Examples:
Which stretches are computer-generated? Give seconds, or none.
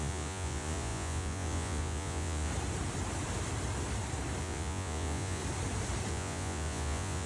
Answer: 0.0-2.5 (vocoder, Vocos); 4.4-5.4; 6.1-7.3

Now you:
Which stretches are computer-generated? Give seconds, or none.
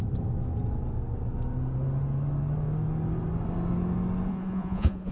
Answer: 4.3-5.1 (vocoder, Vocos)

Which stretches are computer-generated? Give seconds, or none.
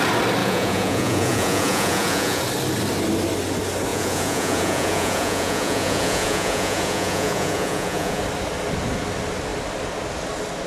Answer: 0.4-2.4 (vocoder, Vocos); 3.9-8.2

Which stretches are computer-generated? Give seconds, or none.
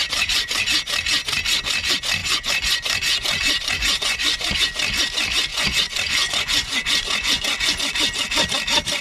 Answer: 0.0-0.6 (vocoder, Vocos); 2.2-4.5; 5.5-7.8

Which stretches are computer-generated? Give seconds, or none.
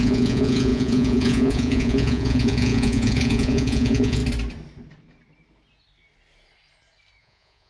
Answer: 0.0-4.2 (vocoder, Vocos); 7.2-7.7